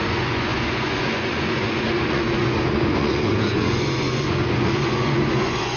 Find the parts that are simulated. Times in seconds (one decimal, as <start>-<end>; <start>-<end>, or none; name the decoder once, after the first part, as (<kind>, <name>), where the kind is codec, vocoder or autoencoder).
0.0-5.8 (vocoder, Vocos)